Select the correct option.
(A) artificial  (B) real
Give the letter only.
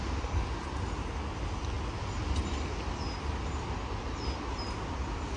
B